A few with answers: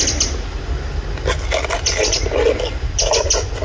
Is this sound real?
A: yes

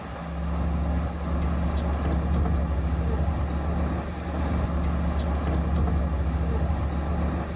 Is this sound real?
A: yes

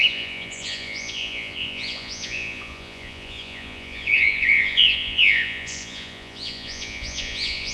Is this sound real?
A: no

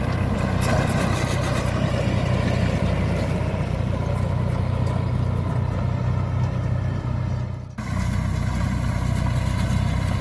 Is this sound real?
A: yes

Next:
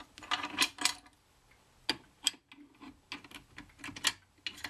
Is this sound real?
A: yes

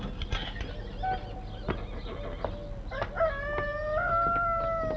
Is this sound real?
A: yes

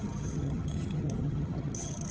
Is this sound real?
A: no